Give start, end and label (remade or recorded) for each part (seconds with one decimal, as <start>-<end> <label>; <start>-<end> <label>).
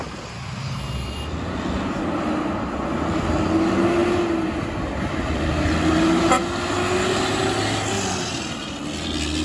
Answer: 0.0-9.4 recorded